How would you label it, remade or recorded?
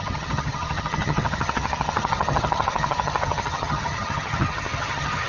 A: remade